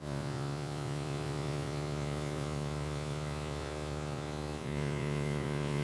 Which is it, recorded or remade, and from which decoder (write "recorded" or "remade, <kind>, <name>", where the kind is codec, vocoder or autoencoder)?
remade, vocoder, Vocos